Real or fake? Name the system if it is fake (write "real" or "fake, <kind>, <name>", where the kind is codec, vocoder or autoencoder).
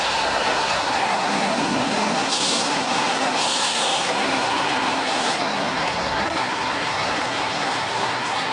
fake, codec, SNAC